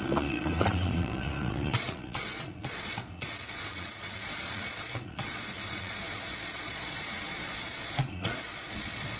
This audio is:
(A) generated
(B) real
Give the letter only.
A